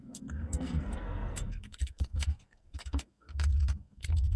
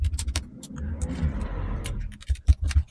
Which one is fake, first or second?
first